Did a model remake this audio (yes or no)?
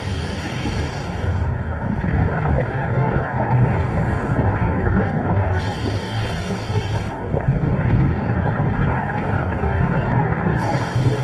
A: yes